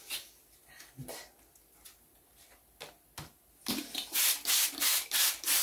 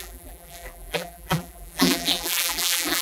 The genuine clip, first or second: first